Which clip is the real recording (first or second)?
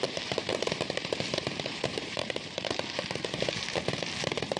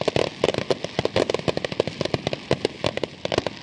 second